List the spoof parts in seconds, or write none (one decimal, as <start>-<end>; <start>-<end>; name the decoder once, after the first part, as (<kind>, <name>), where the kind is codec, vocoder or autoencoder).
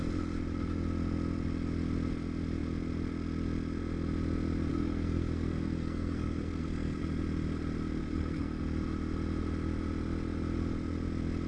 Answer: 4.7-7.0 (codec, SNAC); 8.0-8.6